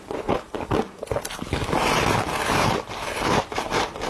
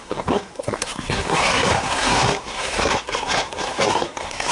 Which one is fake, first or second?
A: second